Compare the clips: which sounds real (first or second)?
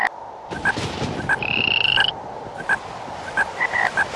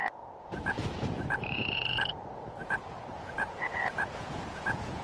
first